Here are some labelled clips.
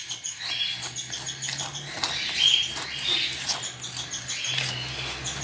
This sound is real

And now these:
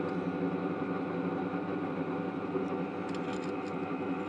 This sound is real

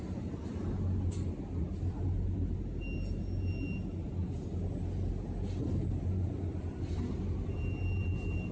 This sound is real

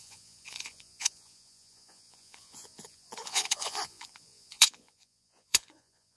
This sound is fake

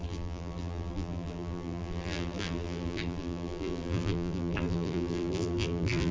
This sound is fake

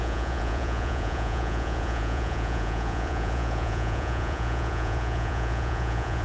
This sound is fake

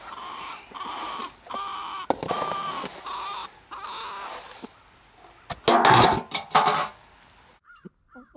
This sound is real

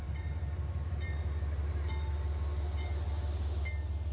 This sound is real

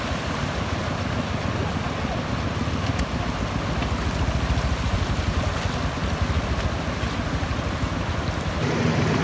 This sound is real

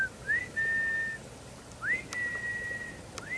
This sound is real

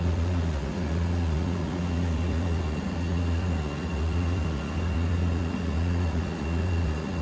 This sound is fake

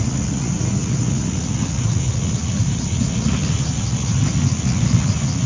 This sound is fake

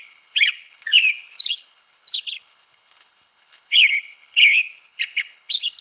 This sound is fake